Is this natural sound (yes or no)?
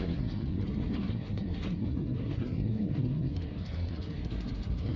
no